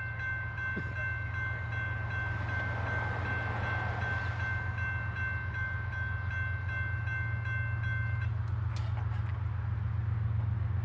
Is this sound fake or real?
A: real